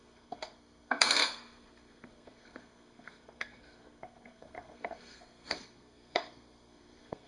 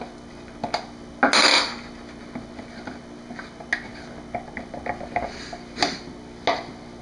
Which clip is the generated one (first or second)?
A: first